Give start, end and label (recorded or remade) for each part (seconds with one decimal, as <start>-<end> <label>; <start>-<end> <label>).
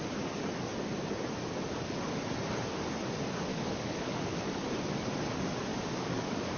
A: 0.0-3.5 recorded; 3.5-4.5 remade; 4.5-5.7 recorded; 5.7-6.6 remade